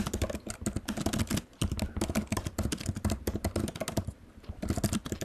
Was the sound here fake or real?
real